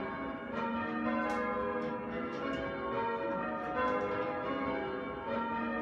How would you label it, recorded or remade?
recorded